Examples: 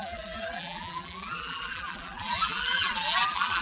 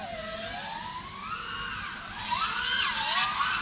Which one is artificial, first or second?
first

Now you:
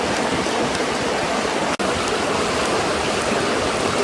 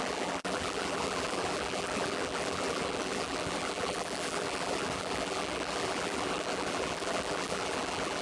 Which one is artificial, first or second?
second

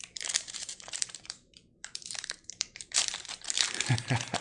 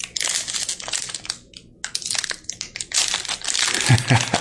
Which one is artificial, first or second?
first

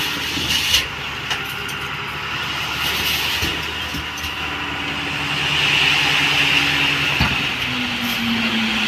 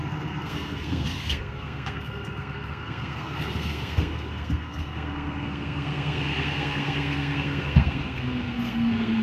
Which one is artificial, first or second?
second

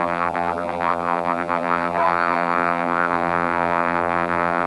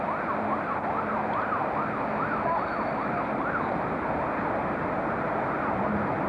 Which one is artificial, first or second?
first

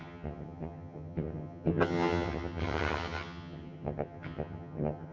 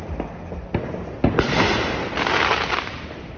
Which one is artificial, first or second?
first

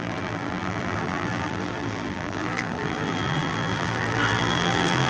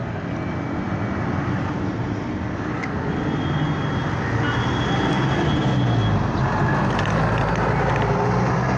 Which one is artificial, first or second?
first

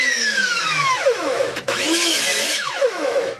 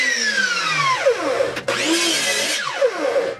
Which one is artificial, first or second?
first